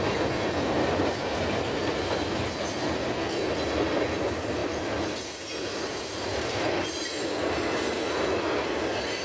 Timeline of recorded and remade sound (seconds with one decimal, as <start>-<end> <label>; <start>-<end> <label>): 0.0-9.2 recorded